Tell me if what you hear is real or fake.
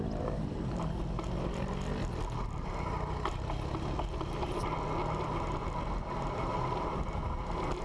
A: real